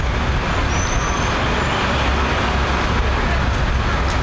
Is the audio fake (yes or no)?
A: no